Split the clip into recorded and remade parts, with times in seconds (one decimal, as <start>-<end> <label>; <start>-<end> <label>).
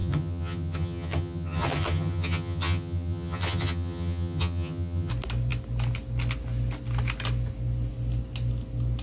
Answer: 0.0-5.1 remade; 5.1-9.0 recorded